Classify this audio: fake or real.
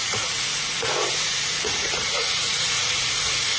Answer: fake